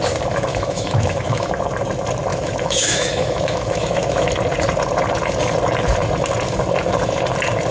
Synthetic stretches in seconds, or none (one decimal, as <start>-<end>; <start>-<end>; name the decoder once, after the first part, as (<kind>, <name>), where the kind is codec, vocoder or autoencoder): 0.5-1.5 (autoencoder, DAC-VAE); 2.3-4.3